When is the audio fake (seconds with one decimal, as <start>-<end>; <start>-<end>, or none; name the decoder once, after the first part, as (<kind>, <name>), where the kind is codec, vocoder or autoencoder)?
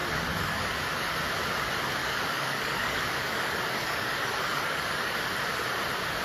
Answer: 0.0-1.2 (codec, DAC); 2.0-5.2